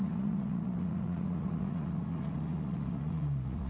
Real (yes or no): no